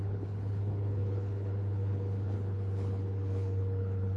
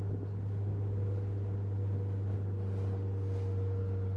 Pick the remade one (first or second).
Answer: first